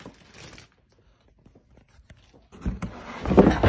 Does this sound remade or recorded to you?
recorded